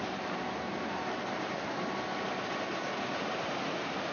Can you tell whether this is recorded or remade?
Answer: recorded